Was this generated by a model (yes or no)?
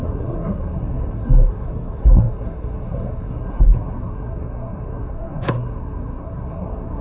yes